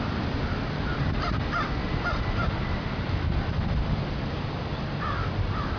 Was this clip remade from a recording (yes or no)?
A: yes